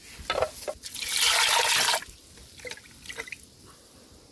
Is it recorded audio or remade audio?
recorded